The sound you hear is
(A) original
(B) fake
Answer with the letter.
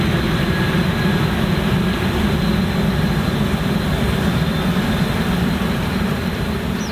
A